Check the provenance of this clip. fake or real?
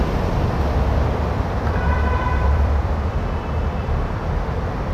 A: fake